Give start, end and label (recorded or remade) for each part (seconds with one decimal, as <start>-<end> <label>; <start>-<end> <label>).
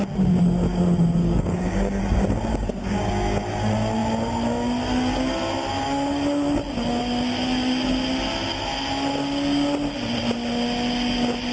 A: 0.0-1.2 recorded; 1.2-2.0 remade; 2.0-2.5 recorded; 2.5-3.1 remade; 3.1-11.5 recorded